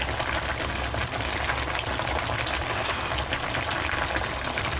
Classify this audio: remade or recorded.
recorded